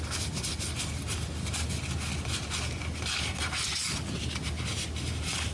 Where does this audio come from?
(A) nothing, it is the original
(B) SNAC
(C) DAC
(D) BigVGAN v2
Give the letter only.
A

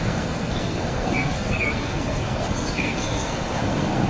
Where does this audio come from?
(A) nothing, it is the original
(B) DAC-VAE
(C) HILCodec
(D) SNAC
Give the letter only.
D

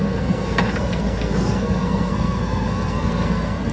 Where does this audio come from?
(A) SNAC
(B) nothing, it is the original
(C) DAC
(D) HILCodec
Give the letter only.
A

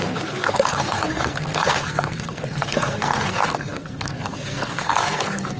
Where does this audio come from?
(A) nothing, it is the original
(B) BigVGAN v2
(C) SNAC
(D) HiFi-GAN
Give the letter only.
C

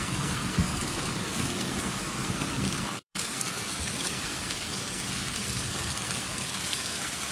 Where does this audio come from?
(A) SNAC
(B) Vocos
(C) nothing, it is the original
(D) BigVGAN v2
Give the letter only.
A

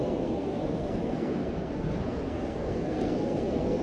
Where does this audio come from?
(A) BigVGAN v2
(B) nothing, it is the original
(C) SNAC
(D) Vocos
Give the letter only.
C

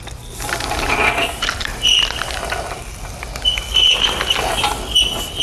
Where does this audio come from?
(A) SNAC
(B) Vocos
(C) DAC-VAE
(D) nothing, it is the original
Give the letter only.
D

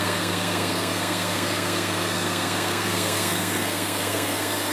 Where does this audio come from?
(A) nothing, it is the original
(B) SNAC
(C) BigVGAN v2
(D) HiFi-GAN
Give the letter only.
B